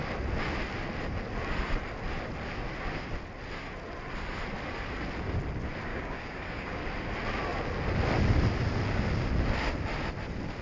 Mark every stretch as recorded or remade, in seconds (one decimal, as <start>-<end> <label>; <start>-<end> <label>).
0.0-5.9 recorded; 5.9-6.8 remade; 6.8-10.6 recorded